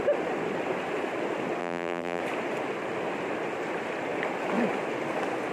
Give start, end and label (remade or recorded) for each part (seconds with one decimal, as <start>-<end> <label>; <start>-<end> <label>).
0.0-1.6 recorded; 1.6-2.2 remade; 2.2-5.5 recorded